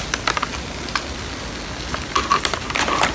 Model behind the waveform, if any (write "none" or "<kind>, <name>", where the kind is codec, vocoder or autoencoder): none